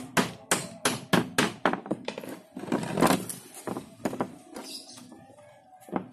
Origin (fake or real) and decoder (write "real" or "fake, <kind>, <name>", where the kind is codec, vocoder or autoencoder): real